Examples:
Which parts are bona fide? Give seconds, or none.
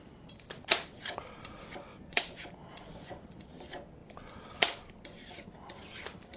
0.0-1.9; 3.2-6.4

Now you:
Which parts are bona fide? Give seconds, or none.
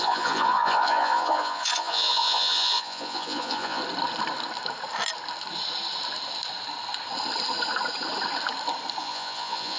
3.8-9.0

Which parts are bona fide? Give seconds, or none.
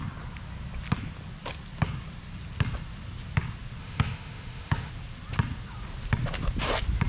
0.0-3.8; 4.9-7.1